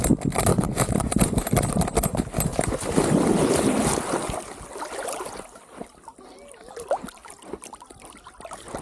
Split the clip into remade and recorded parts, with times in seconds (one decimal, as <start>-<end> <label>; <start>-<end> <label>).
0.0-0.5 recorded; 0.5-1.2 remade; 1.2-7.2 recorded; 7.2-7.9 remade; 7.9-8.8 recorded